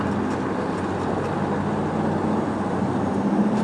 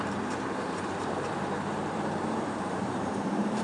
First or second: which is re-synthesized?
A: second